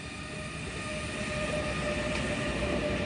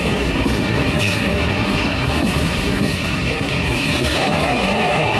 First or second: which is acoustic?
first